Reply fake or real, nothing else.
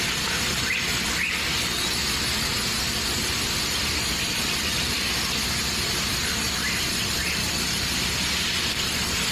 real